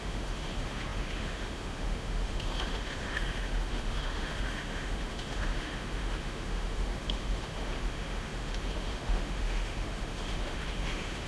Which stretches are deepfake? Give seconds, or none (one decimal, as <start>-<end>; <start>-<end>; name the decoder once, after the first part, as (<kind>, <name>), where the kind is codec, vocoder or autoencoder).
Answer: 0.0-11.3 (autoencoder, DAC-VAE)